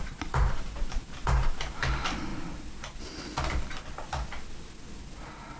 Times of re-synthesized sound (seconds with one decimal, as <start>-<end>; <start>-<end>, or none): 0.0-1.6

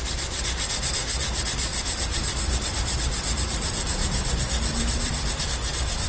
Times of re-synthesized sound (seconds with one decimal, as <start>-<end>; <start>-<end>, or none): 1.7-5.4

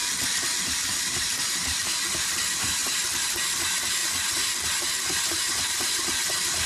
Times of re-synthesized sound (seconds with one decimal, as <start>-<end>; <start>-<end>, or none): 0.6-6.7

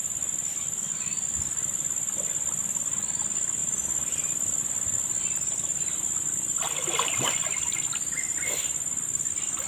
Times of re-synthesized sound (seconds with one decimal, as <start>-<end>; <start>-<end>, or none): none

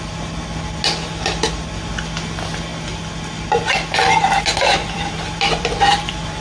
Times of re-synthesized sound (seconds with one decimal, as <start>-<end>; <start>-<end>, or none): 4.8-6.4

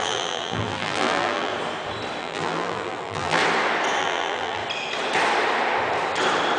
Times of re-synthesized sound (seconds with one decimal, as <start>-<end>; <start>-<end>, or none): 0.0-1.5; 2.2-3.4; 4.0-4.6